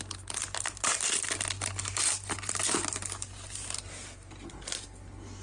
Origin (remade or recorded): recorded